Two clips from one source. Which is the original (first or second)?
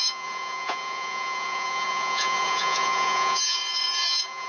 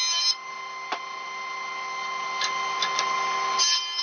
second